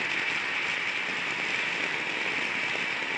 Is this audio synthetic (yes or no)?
no